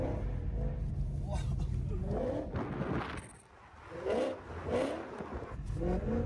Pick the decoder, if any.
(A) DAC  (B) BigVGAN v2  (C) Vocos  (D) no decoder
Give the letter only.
D